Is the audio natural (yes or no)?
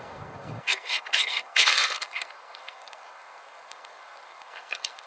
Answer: no